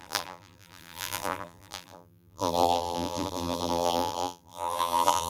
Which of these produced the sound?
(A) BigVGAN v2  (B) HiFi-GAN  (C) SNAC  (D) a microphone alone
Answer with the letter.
A